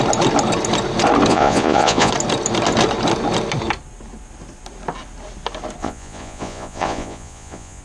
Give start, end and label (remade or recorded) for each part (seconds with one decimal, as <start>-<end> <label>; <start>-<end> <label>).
0.0-1.3 recorded; 1.3-2.1 remade; 2.1-5.8 recorded; 5.8-7.8 remade